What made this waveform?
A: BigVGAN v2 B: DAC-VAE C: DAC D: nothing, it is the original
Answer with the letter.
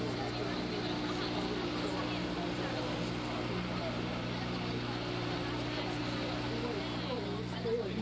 D